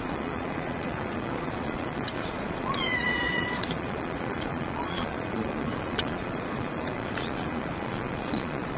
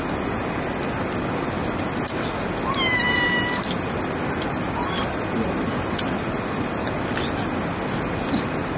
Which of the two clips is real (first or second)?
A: second